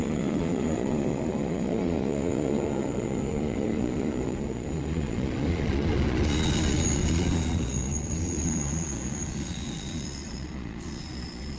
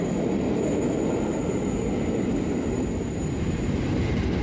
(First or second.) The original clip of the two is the second